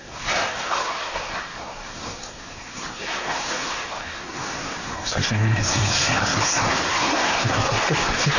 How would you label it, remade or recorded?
remade